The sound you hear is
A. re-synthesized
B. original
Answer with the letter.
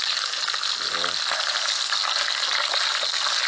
B